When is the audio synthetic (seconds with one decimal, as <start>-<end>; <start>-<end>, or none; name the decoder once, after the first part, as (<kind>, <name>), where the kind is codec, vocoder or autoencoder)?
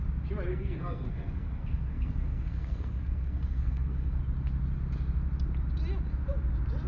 0.5-4.2 (codec, SNAC)